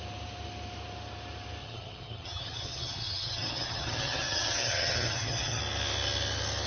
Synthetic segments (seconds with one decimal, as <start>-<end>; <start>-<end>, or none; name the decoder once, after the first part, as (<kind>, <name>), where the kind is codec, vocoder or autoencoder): 1.6-5.6 (vocoder, HiFi-GAN)